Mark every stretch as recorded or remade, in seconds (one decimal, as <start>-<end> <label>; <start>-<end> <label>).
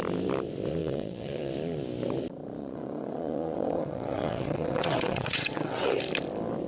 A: 0.0-0.8 recorded; 0.8-1.5 remade; 1.5-2.6 recorded; 2.6-6.0 remade; 6.0-6.7 recorded